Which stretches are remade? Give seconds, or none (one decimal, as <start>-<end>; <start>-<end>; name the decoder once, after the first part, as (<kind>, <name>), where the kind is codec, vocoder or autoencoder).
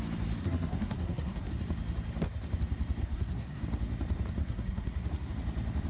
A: 0.4-1.5 (codec, SNAC); 3.0-3.6; 4.4-5.3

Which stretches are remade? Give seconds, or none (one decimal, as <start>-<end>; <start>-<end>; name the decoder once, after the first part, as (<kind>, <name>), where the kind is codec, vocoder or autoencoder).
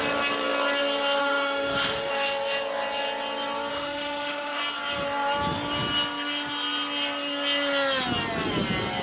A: 1.2-2.1 (autoencoder, DAC-VAE); 3.7-4.6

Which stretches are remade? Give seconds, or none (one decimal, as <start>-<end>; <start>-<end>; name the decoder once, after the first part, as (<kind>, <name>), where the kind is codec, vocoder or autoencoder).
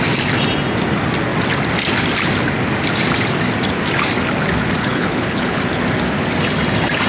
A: 4.8-5.6 (codec, HILCodec)